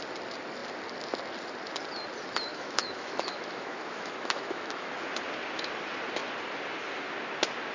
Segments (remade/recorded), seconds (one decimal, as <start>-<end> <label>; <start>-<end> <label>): 0.0-2.5 recorded; 2.5-4.9 remade; 4.9-7.7 recorded